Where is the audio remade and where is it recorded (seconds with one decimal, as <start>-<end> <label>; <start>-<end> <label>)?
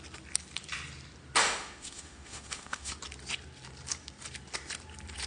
0.0-1.4 recorded; 1.4-2.9 remade; 2.9-5.3 recorded